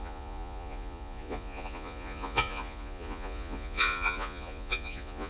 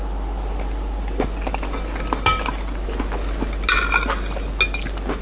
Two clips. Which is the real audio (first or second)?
second